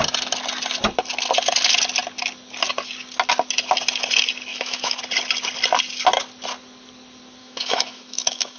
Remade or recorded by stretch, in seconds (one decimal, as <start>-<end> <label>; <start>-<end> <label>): 0.0-4.5 recorded; 4.5-5.0 remade; 5.0-7.4 recorded; 7.4-8.6 remade